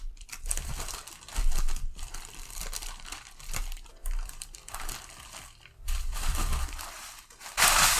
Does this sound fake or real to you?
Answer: fake